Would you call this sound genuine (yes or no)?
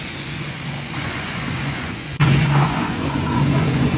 no